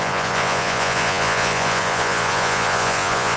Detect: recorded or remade remade